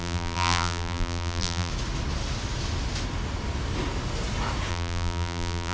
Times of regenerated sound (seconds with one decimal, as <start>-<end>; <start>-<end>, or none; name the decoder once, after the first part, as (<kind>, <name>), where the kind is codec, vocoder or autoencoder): 0.0-1.7 (vocoder, BigVGAN v2); 4.7-5.7